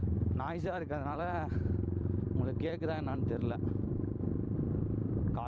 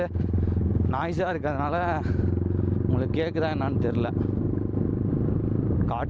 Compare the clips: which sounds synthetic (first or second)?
first